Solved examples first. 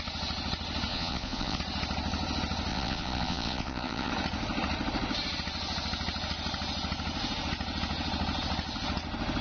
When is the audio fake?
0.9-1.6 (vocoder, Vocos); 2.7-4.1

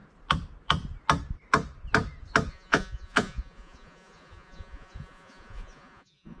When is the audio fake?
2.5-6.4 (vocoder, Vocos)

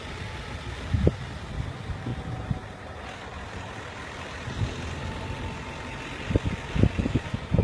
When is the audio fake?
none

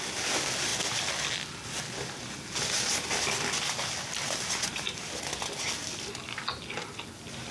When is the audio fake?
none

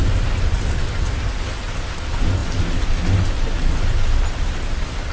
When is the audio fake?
none